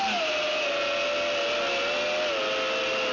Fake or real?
real